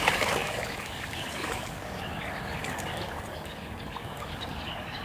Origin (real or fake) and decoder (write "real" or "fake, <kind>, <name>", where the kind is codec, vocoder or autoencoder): fake, codec, DAC